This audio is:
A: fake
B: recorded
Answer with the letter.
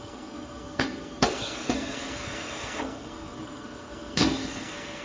A